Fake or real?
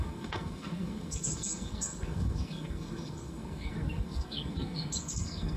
fake